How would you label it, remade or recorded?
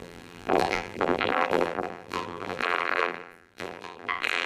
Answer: remade